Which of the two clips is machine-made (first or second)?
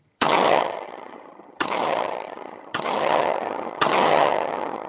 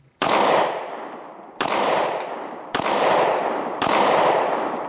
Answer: first